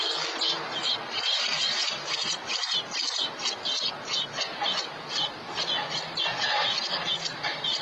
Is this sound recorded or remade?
recorded